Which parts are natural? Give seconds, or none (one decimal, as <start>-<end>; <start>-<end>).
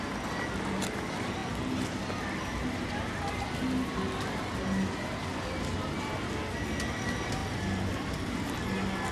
0.0-7.4; 8.5-9.1